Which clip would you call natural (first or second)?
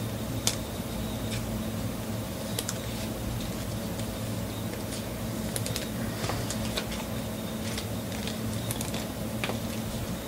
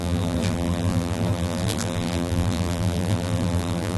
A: first